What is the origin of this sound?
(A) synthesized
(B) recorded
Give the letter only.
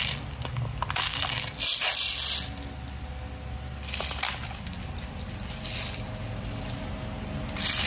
B